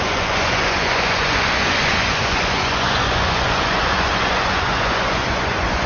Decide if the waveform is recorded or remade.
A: remade